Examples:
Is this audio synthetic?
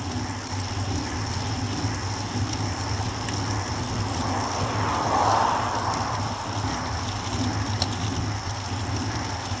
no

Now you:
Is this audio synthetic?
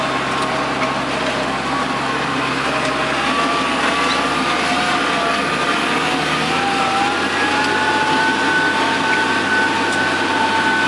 no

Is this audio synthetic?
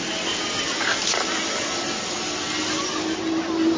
no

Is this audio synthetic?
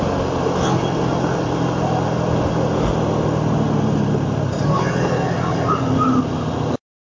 no